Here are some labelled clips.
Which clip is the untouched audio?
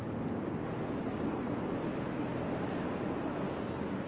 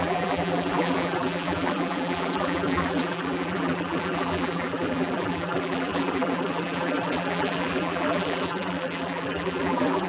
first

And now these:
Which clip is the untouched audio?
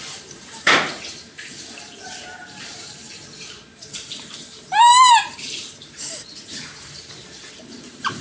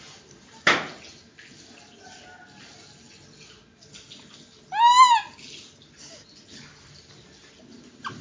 second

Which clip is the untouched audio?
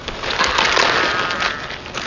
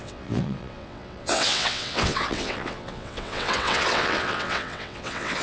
first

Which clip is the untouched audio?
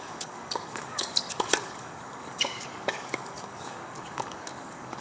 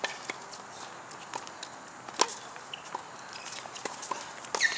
second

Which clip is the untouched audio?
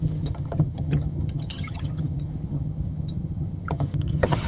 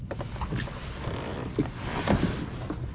second